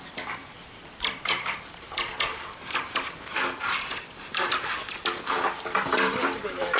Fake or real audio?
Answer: fake